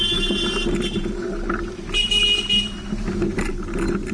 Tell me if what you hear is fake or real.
real